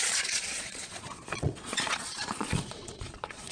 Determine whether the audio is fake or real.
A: fake